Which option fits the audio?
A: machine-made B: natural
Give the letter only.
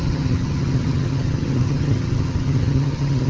A